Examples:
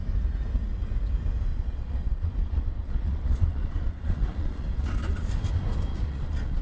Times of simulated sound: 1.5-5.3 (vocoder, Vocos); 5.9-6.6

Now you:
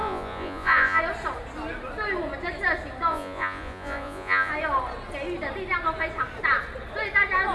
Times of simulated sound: 0.0-1.0 (vocoder, Vocos); 3.1-4.5

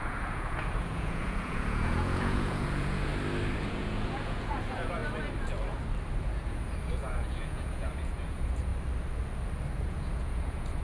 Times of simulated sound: 0.0-3.1 (vocoder, Vocos); 3.6-5.0; 6.2-8.7; 9.8-10.8

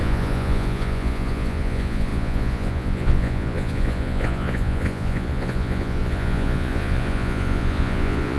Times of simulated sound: 0.0-8.4 (vocoder, Vocos)

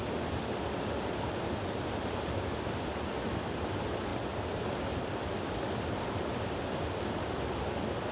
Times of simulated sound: none

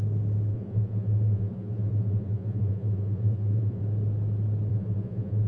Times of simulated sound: 0.5-3.8 (vocoder, Vocos); 4.7-5.5

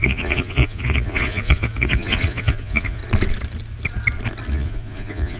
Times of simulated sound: 0.0-3.0 (vocoder, Vocos); 4.5-5.4

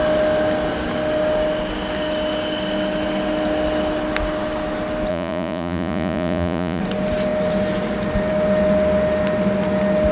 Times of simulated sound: 5.1-6.8 (vocoder, Vocos)